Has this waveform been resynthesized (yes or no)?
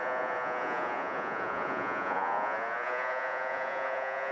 yes